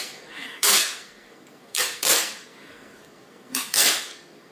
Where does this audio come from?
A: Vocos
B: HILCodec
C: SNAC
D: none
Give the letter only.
C